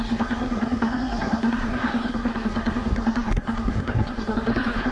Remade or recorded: remade